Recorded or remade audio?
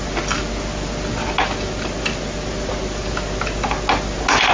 recorded